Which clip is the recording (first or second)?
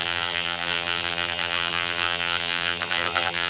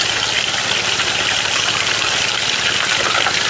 second